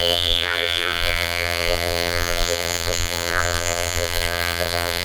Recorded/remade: remade